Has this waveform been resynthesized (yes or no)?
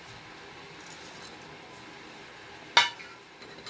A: no